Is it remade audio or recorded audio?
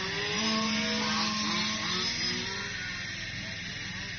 recorded